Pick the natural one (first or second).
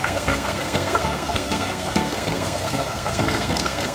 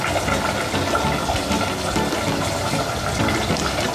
second